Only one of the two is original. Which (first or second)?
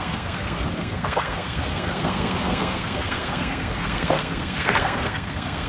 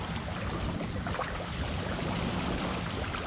second